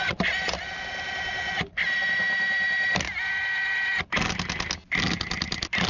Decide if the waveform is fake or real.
real